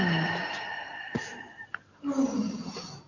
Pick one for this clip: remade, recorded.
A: recorded